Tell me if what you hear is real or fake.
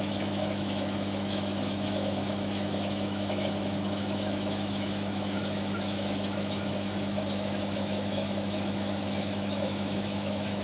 fake